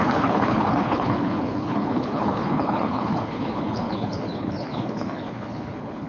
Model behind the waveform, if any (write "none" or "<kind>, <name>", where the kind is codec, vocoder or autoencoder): codec, HILCodec